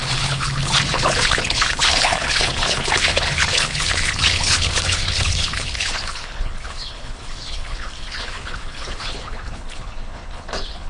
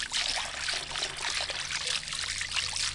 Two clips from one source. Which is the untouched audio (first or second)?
second